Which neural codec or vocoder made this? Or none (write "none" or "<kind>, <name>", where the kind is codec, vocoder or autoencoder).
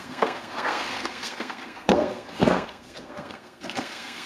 codec, SNAC